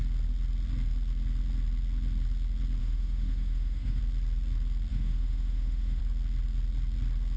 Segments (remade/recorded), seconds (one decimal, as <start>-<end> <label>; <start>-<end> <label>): 0.0-2.8 recorded; 2.8-4.0 remade; 4.0-4.9 recorded; 4.9-6.0 remade; 6.0-7.4 recorded